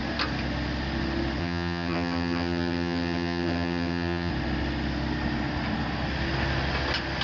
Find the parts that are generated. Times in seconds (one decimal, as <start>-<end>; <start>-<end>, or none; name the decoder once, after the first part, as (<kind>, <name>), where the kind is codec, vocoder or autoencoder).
1.4-4.3 (vocoder, HiFi-GAN)